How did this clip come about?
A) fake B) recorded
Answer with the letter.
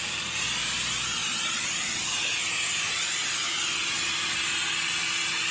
B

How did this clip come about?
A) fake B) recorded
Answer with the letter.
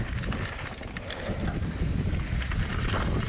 B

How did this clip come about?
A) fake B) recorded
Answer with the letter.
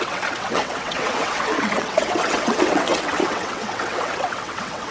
A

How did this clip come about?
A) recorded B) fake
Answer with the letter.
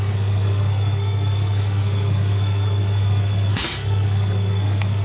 B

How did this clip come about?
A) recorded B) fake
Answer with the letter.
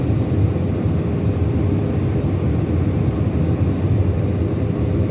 A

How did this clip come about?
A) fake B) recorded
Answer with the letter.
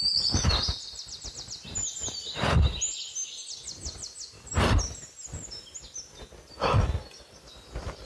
B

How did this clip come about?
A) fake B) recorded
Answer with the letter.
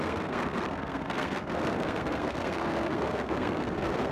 A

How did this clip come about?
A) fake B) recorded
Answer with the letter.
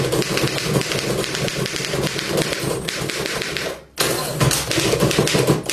B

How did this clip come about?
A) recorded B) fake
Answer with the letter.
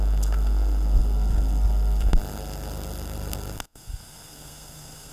B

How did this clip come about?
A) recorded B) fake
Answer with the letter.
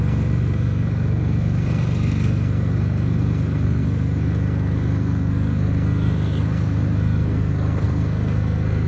B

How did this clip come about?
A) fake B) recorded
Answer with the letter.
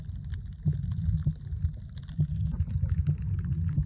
B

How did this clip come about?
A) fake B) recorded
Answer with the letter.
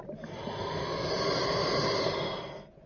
B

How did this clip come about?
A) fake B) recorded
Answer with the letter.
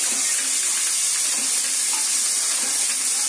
B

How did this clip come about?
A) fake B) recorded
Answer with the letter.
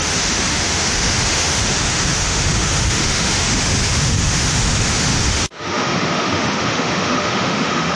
A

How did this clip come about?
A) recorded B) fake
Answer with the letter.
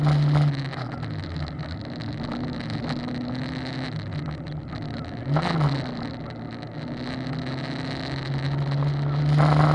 A